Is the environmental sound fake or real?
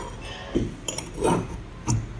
real